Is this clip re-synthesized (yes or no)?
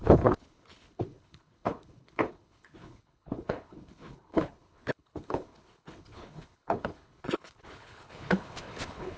yes